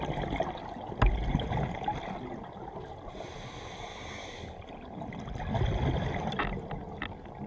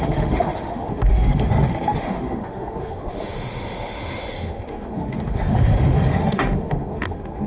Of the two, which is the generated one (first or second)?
second